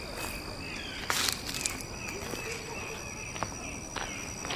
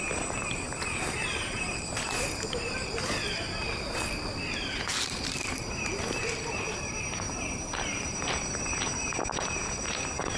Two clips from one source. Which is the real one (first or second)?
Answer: first